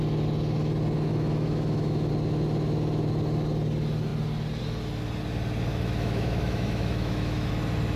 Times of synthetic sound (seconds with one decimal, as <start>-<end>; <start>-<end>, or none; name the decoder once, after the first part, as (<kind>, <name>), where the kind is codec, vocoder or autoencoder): 1.1-2.1 (autoencoder, DAC-VAE); 5.7-7.5